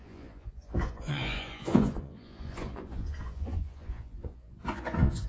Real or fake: fake